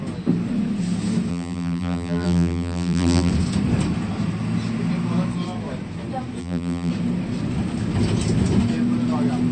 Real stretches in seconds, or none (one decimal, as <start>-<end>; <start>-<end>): 0.0-1.3; 3.3-6.4; 6.9-9.5